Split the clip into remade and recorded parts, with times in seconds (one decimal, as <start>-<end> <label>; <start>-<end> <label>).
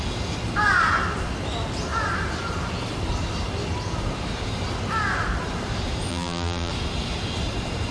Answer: 0.0-6.1 recorded; 6.1-6.7 remade; 6.7-7.9 recorded